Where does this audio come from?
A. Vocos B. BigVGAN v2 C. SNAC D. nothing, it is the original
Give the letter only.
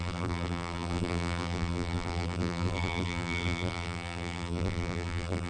B